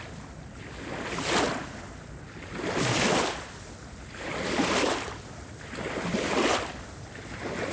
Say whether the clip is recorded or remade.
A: recorded